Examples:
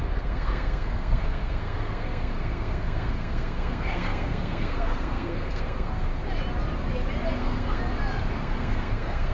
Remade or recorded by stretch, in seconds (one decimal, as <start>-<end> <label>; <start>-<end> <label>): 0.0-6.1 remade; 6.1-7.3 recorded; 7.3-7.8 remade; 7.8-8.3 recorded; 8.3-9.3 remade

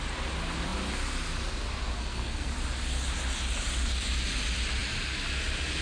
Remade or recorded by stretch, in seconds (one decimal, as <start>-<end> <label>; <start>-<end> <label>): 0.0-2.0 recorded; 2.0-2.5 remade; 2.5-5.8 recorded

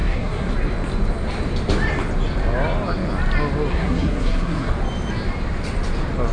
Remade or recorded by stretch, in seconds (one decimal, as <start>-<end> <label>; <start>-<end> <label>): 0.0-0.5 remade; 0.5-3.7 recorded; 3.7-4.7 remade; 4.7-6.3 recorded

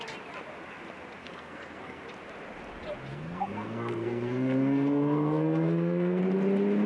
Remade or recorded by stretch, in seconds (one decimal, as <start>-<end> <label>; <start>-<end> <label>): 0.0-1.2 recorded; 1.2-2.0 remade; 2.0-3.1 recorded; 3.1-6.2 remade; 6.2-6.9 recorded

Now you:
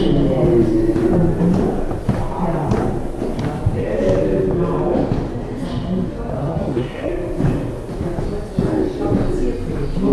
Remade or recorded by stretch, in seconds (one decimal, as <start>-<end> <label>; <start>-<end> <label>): 0.0-6.4 recorded; 6.4-7.1 remade; 7.1-10.1 recorded

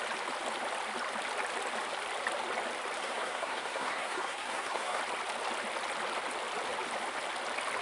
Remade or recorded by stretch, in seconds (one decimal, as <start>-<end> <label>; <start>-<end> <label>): 0.0-3.0 recorded; 3.0-5.0 remade; 5.0-7.8 recorded

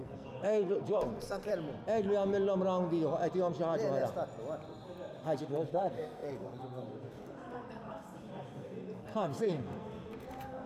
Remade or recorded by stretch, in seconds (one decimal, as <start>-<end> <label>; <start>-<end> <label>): 0.0-1.5 remade; 1.5-5.4 recorded; 5.4-10.7 remade